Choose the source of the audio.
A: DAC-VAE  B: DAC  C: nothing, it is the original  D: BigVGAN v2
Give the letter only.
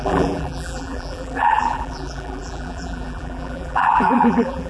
D